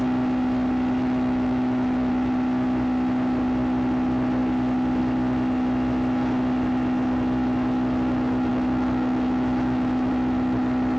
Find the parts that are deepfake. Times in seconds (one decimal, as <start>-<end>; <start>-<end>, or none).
1.0-2.1; 8.5-10.1